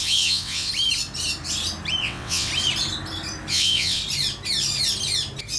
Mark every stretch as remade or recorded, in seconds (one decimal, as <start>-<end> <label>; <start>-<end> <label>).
0.0-0.7 remade; 0.7-2.0 recorded; 2.0-2.5 remade; 2.5-3.5 recorded; 3.5-4.0 remade; 4.0-5.6 recorded